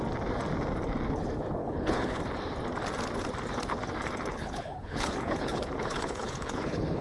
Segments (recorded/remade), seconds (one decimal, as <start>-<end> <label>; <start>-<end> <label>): 0.0-1.6 recorded; 1.6-2.2 remade; 2.2-4.3 recorded; 4.3-7.0 remade